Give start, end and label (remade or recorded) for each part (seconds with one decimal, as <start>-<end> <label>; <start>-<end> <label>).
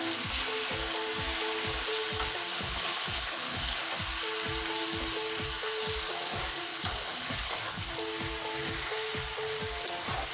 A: 0.0-2.5 recorded; 2.5-3.9 remade; 3.9-6.7 recorded; 6.7-7.9 remade; 7.9-10.3 recorded